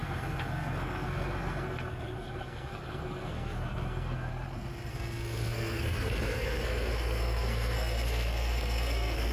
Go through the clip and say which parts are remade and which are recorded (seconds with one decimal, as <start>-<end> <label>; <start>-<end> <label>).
0.0-4.3 remade; 4.3-4.9 recorded; 4.9-9.3 remade